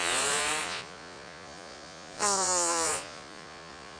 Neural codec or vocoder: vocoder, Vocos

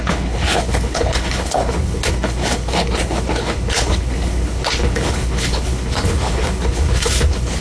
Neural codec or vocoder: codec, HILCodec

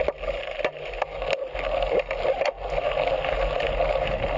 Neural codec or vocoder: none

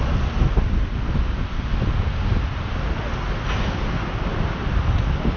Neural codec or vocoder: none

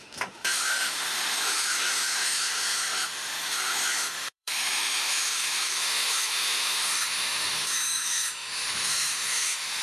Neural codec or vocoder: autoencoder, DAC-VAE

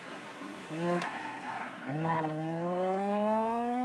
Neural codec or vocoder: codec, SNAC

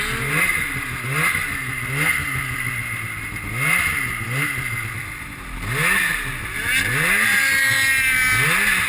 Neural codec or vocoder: none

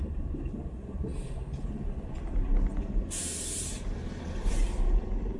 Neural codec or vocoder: vocoder, BigVGAN v2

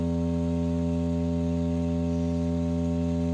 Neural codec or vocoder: none